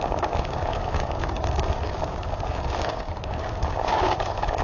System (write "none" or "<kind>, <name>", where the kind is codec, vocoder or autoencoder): codec, DAC